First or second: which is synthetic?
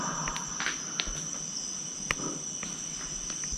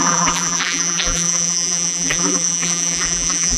second